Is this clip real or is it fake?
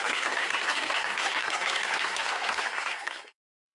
fake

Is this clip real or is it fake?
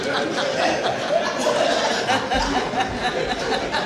real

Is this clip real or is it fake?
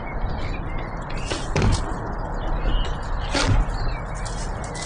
real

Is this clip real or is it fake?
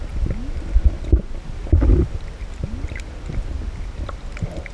real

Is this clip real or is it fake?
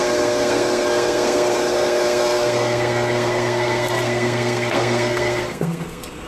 fake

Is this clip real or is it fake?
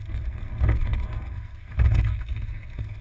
fake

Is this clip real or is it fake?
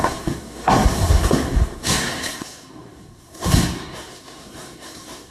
fake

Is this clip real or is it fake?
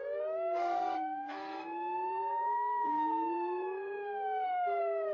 fake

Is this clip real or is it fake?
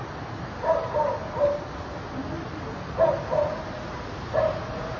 real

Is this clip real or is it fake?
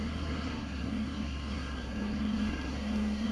fake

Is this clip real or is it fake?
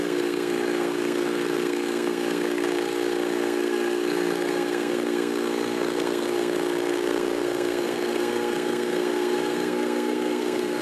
fake